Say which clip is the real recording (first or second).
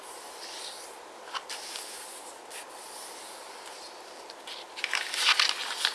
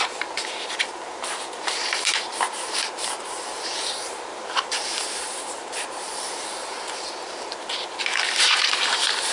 first